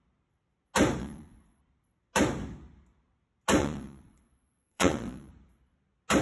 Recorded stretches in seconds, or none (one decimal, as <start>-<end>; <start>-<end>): 0.0-1.0; 1.6-3.6; 5.3-6.2